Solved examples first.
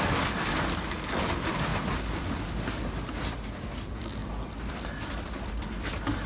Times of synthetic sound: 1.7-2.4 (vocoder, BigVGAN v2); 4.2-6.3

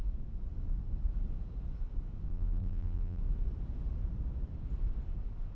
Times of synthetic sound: 2.3-3.2 (vocoder, BigVGAN v2)